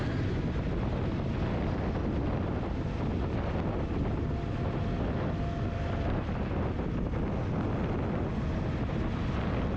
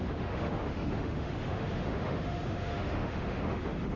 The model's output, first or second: second